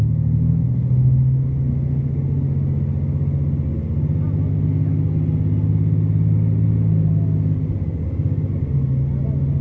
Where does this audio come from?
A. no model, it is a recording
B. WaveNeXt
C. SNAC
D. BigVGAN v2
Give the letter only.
A